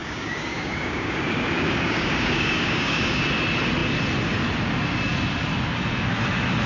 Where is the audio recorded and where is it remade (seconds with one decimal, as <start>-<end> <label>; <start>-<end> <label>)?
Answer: 0.0-3.2 remade; 3.2-6.7 recorded